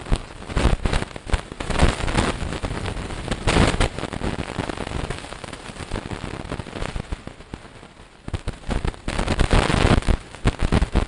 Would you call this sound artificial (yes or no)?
no